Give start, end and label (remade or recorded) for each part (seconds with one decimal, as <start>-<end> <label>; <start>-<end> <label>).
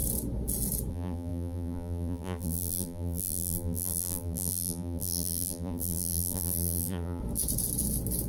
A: 0.0-0.9 recorded; 0.9-7.2 remade; 7.2-8.3 recorded